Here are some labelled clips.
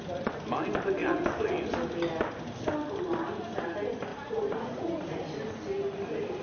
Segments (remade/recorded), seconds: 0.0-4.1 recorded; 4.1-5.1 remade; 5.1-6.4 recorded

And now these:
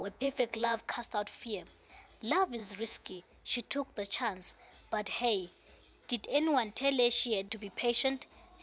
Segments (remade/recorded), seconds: 0.0-0.8 remade; 0.8-2.6 recorded; 2.6-3.2 remade; 3.2-8.6 recorded

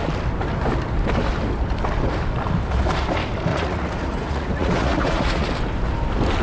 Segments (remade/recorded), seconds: 0.0-3.5 recorded; 3.5-5.5 remade; 5.5-6.4 recorded

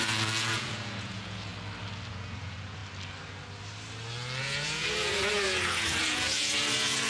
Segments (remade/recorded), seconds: 0.0-1.5 remade; 1.5-2.1 recorded; 2.1-2.8 remade; 2.8-4.4 recorded; 4.4-7.1 remade

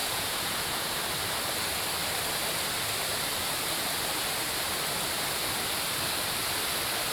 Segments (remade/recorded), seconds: 0.0-0.9 remade; 0.9-7.1 recorded

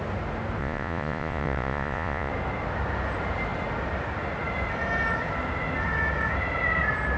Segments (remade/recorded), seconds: 0.0-0.6 recorded; 0.6-2.3 remade; 2.3-7.2 recorded

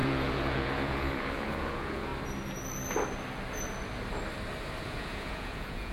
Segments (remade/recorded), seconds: 0.0-2.1 remade; 2.1-4.8 recorded; 4.8-5.9 remade